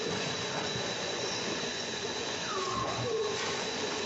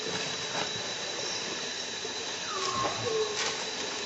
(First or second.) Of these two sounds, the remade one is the first